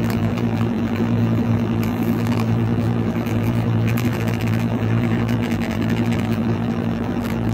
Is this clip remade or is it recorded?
remade